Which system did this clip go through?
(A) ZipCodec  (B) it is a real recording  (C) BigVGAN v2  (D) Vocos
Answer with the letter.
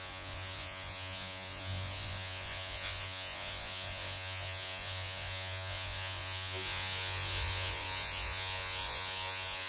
D